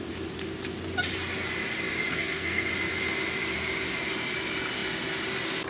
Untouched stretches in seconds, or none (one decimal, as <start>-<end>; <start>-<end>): 0.0-2.1; 2.7-5.7